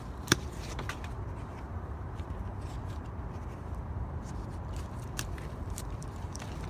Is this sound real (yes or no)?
no